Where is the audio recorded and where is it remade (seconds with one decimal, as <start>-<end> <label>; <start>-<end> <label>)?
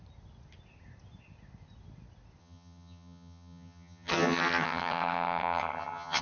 0.0-2.4 recorded; 2.4-6.2 remade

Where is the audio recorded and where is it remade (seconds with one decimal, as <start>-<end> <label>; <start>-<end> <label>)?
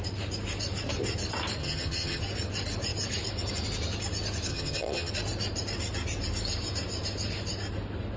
0.0-1.6 recorded; 1.6-2.2 remade; 2.2-4.5 recorded; 4.5-5.1 remade; 5.1-8.2 recorded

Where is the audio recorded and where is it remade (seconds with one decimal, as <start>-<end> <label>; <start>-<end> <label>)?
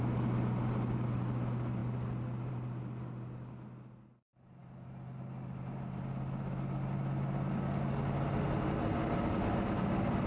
0.0-10.3 recorded